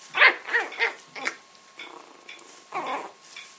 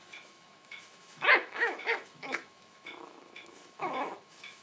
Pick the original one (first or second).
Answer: first